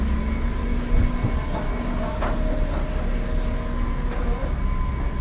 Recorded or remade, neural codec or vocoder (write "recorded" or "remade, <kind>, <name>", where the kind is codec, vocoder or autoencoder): recorded